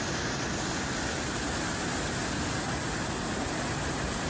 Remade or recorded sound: recorded